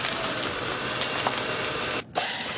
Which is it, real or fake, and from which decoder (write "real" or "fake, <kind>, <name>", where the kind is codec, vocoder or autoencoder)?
real